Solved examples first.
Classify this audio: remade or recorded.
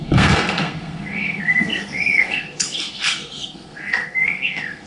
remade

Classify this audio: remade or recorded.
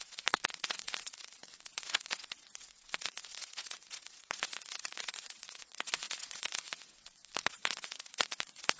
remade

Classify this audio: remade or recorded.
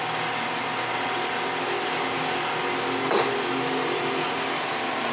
recorded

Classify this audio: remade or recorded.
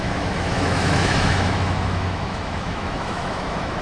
remade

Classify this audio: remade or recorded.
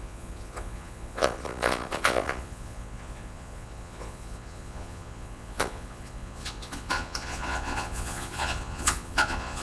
remade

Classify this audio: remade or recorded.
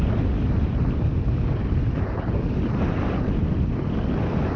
recorded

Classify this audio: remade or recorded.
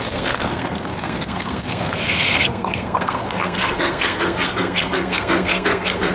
remade